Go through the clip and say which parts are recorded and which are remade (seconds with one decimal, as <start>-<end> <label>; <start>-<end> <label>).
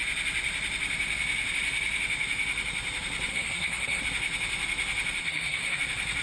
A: 0.0-3.3 recorded; 3.3-4.0 remade; 4.0-5.2 recorded; 5.2-5.8 remade; 5.8-6.2 recorded